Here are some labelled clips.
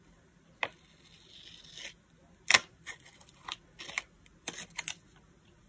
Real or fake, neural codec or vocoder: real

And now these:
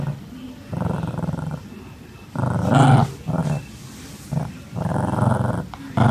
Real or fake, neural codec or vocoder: real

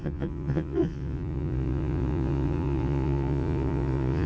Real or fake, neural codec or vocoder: fake, vocoder, Vocos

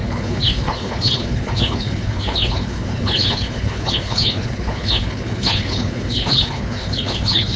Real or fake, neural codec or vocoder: fake, codec, HILCodec